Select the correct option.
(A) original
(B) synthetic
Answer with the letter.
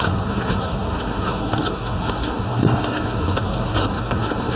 B